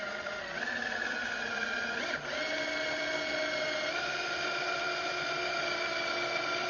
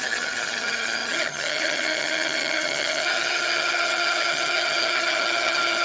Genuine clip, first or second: first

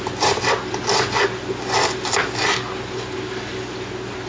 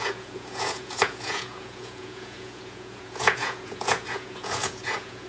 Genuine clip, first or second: first